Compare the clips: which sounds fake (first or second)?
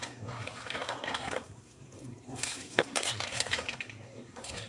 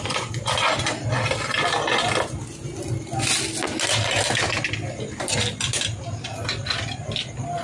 first